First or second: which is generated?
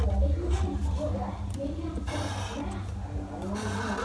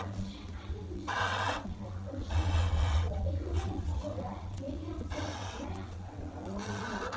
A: second